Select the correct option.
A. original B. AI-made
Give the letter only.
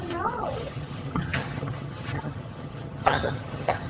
B